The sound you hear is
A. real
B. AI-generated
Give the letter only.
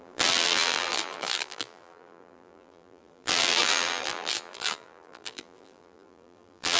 B